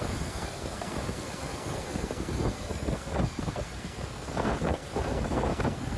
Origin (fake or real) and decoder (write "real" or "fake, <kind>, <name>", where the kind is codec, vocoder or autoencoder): fake, codec, SNAC